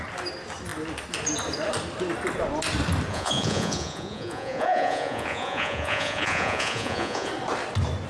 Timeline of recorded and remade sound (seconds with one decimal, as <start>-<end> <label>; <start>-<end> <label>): 0.0-3.1 recorded; 3.1-7.3 remade; 7.3-8.1 recorded